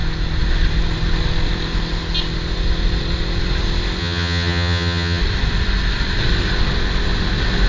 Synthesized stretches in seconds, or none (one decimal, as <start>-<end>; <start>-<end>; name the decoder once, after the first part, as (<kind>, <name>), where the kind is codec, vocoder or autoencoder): 4.0-5.2 (vocoder, HiFi-GAN)